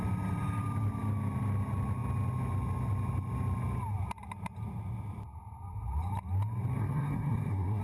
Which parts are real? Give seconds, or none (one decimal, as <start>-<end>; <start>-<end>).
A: 0.0-6.8